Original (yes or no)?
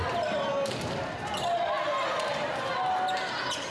yes